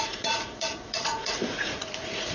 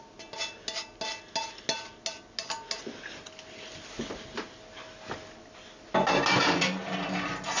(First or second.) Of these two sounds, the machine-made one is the first